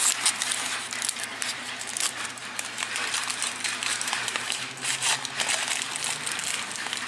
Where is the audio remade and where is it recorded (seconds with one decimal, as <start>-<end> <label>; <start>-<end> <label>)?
0.0-1.3 recorded; 1.3-2.0 remade; 2.0-2.4 recorded; 2.4-5.1 remade; 5.1-7.1 recorded